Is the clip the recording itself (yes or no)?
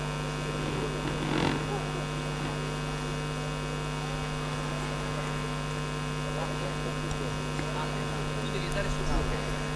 yes